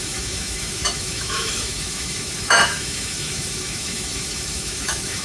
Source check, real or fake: fake